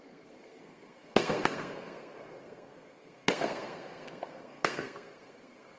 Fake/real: fake